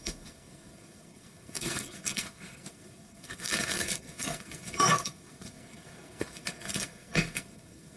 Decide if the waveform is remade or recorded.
remade